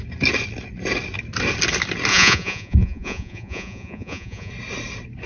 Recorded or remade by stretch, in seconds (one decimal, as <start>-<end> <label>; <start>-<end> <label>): 0.0-2.1 recorded; 2.1-4.5 remade; 4.5-5.3 recorded